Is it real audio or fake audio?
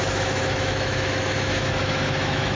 fake